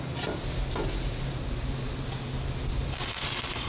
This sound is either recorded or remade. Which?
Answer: recorded